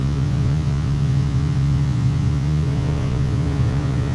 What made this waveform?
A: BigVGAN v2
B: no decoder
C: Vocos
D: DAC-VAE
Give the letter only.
C